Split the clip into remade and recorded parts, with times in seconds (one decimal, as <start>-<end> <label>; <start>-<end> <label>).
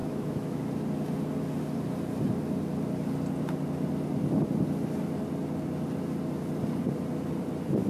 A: 0.0-0.6 remade; 0.6-7.9 recorded